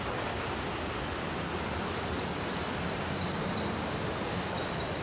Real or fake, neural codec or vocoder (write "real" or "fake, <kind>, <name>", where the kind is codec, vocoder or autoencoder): fake, vocoder, BigVGAN v2